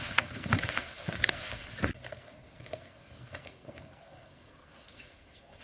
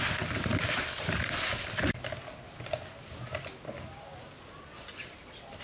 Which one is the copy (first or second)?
first